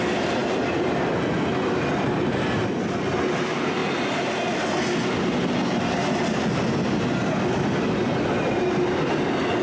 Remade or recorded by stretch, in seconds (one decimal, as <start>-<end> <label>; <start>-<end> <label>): 0.0-9.6 recorded